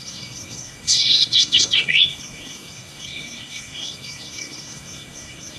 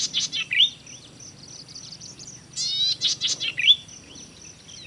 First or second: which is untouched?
second